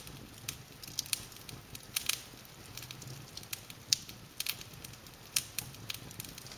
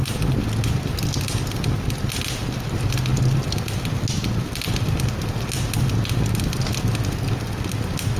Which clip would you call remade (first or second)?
first